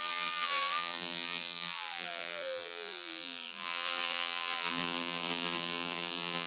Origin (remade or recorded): remade